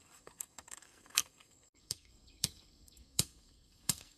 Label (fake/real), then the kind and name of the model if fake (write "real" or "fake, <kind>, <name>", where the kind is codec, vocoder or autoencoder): fake, codec, SNAC